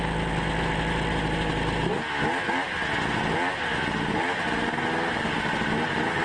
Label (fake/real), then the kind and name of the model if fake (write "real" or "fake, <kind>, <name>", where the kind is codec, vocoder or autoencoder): real